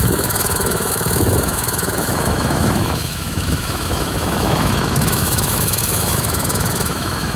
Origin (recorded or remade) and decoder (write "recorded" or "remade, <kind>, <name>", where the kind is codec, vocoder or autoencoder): remade, autoencoder, DAC-VAE